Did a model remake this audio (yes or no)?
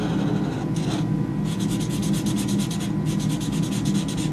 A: no